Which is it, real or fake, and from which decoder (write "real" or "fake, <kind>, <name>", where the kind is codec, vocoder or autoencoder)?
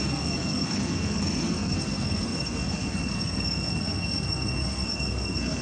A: fake, codec, SNAC